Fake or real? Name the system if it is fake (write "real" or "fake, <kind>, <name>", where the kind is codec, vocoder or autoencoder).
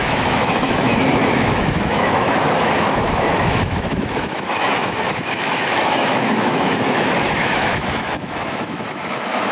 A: fake, autoencoder, DAC-VAE